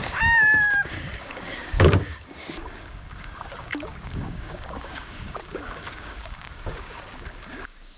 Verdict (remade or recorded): remade